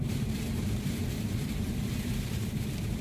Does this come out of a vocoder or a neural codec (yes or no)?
yes